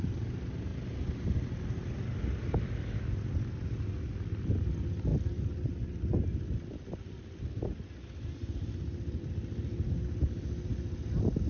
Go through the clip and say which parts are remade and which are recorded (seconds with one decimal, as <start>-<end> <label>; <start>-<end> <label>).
0.0-11.5 recorded